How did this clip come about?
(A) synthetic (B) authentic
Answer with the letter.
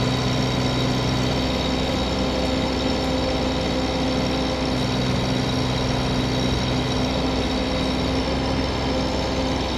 B